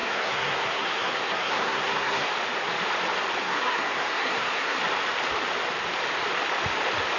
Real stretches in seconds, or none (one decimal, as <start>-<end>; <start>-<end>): 2.3-3.4; 4.8-7.2